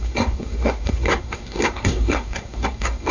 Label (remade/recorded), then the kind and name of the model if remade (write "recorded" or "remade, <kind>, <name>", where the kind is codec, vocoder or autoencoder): remade, codec, SNAC